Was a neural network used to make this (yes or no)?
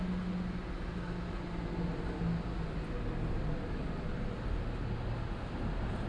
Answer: no